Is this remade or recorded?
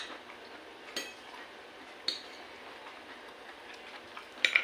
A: recorded